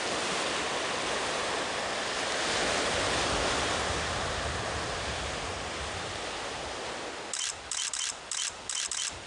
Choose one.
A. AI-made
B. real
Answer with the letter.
B